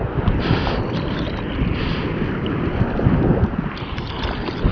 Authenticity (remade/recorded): recorded